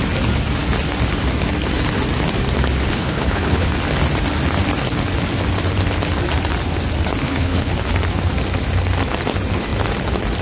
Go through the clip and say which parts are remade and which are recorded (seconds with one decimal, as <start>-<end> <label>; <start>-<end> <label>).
0.0-2.9 recorded; 2.9-3.7 remade; 3.7-7.2 recorded; 7.2-7.7 remade; 7.7-10.4 recorded